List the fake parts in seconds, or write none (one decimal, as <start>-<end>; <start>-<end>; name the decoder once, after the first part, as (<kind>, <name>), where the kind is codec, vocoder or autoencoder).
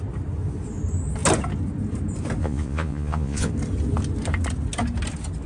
2.4-3.5 (vocoder, Vocos)